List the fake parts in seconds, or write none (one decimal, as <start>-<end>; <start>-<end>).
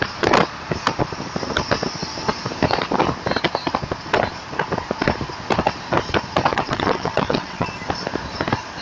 6.5-7.7